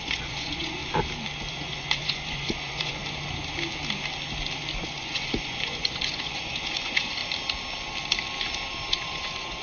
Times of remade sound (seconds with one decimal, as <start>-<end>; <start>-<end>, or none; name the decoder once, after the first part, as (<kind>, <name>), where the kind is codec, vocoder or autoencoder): 0.0-0.8 (vocoder, Vocos); 1.5-3.0; 4.8-7.2; 8.9-9.6